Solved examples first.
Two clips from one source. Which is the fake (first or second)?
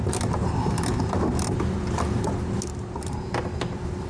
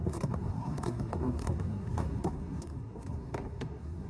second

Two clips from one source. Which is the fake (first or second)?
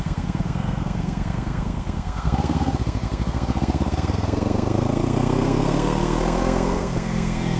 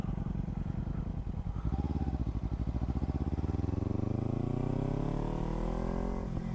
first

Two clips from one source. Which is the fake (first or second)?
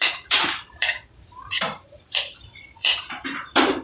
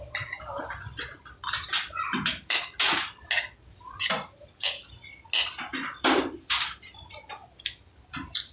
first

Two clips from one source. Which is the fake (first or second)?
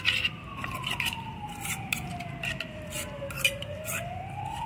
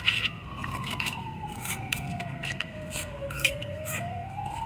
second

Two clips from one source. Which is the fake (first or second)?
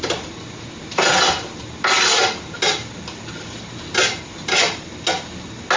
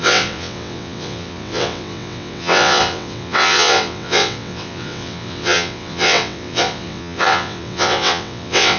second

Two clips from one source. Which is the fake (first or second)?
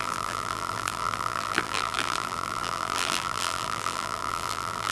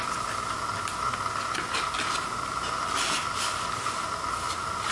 first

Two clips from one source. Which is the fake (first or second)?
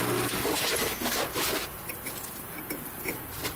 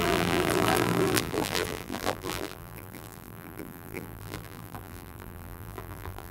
second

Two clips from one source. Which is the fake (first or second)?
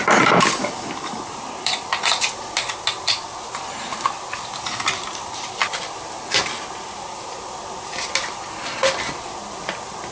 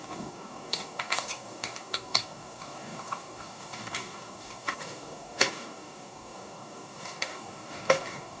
second